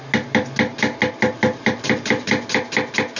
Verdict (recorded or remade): recorded